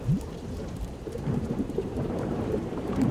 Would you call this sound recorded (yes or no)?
no